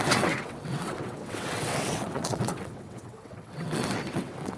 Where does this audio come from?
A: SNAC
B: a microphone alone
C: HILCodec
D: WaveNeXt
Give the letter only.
D